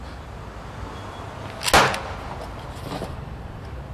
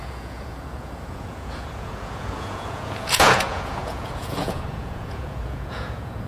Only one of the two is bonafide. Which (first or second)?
first